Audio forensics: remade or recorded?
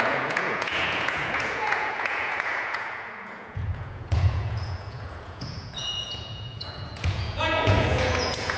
remade